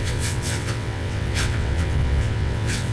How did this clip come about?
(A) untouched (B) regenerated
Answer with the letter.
B